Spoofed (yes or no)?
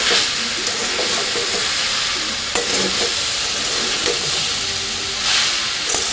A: no